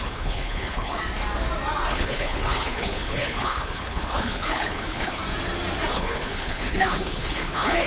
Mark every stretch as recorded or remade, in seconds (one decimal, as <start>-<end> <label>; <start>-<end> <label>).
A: 0.0-1.0 remade; 1.0-1.9 recorded; 1.9-5.2 remade; 5.2-5.9 recorded; 5.9-7.9 remade